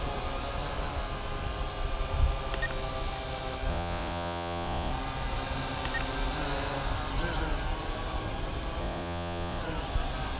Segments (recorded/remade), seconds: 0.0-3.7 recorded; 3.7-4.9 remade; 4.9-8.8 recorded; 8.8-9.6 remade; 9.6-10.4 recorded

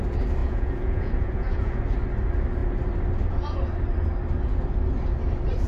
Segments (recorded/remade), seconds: 0.0-0.4 recorded; 0.4-1.8 remade; 1.8-5.7 recorded

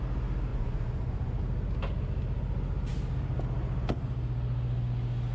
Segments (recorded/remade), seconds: 0.0-0.5 recorded; 0.5-1.4 remade; 1.4-5.3 recorded

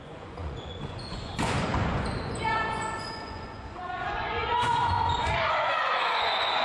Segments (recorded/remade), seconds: 0.0-6.6 remade

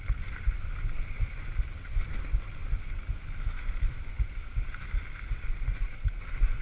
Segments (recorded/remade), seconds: 0.0-6.6 recorded

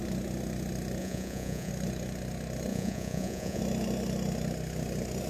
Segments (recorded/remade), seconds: 0.0-1.0 recorded; 1.0-1.7 remade; 1.7-2.7 recorded; 2.7-3.6 remade; 3.6-5.3 recorded

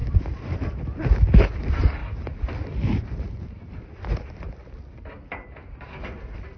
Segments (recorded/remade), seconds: 0.0-6.6 recorded